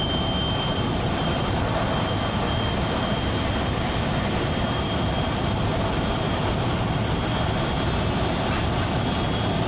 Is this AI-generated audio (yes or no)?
no